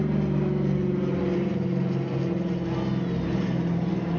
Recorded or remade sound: recorded